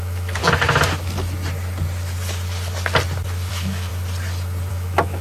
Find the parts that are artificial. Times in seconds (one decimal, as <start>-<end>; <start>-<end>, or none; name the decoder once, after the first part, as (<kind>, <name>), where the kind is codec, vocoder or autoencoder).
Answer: 0.0-0.4 (autoencoder, DAC-VAE); 3.5-3.9; 4.7-5.2